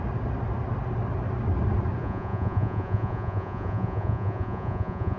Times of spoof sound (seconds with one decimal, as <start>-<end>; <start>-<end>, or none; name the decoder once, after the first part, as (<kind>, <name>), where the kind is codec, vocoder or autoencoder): 2.0-5.2 (vocoder, Vocos)